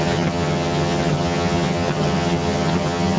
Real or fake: fake